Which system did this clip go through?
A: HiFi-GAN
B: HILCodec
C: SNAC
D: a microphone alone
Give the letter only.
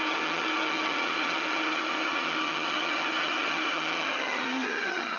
A